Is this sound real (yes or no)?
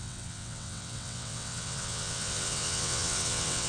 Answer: no